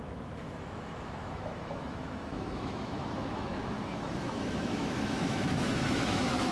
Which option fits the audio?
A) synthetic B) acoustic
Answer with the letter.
A